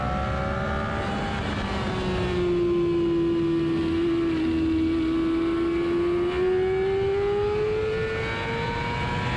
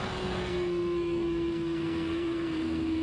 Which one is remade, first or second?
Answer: second